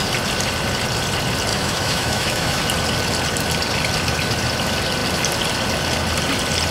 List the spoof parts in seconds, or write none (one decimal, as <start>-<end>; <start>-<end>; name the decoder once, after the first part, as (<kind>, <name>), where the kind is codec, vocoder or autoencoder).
1.5-2.6 (autoencoder, DAC-VAE)